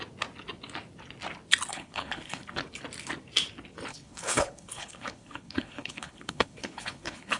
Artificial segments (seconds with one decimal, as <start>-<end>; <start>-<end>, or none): 1.7-2.6; 3.9-7.4